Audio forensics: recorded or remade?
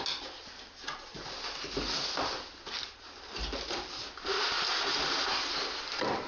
recorded